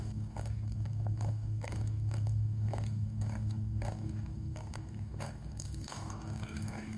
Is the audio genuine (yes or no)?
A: no